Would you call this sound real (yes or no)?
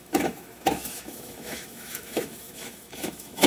no